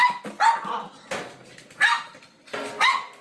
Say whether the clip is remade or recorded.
recorded